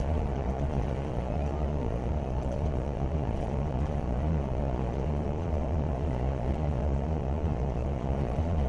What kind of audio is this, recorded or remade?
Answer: remade